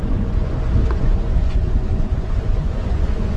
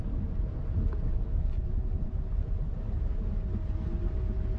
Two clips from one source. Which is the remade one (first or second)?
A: first